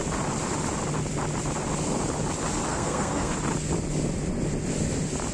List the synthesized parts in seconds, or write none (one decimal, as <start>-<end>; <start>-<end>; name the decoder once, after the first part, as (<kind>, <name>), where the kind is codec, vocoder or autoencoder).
2.7-3.3 (codec, SNAC)